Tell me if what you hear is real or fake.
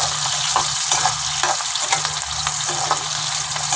real